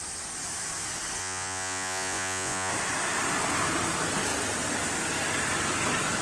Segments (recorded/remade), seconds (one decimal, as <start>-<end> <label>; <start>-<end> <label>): 0.0-1.2 recorded; 1.2-2.7 remade; 2.7-6.2 recorded